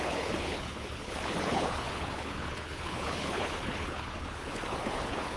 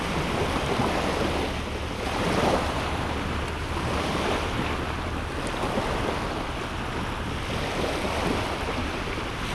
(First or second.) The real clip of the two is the second